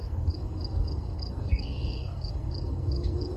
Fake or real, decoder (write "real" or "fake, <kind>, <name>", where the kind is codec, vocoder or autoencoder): fake, codec, SNAC